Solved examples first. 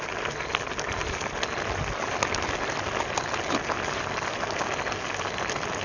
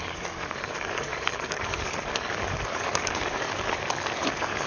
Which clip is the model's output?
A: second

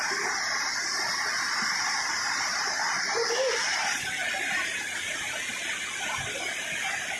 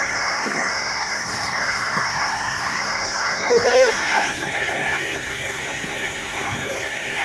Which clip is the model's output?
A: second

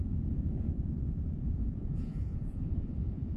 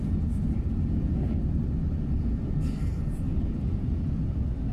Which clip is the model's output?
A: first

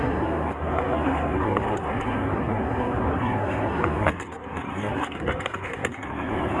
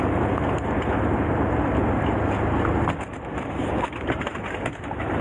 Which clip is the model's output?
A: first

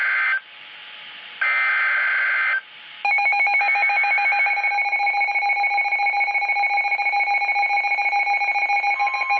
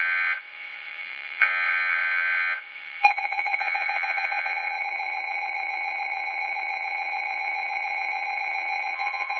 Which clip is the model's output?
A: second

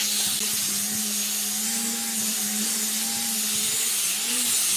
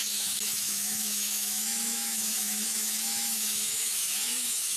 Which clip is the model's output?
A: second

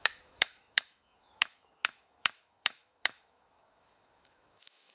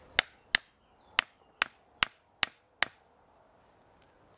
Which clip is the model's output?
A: first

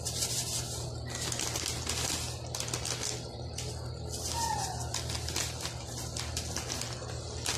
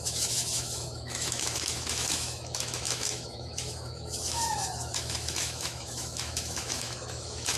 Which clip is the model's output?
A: second